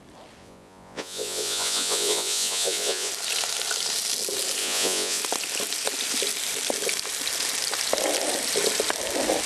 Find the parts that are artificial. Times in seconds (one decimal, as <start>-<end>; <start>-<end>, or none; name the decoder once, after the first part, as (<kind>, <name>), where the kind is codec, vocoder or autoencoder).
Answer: 0.4-3.1 (vocoder, Vocos); 4.6-5.2